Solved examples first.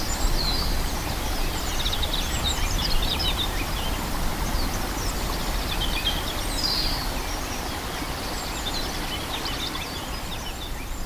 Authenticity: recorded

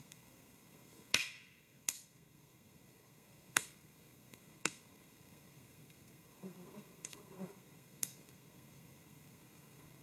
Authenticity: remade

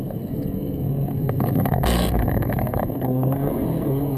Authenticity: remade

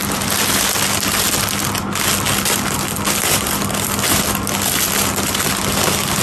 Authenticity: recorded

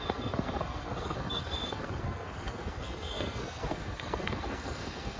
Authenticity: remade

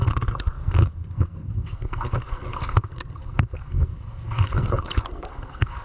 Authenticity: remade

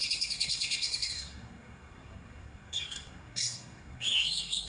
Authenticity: remade